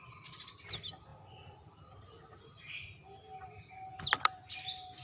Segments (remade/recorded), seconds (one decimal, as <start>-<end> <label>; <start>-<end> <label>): 0.0-5.0 recorded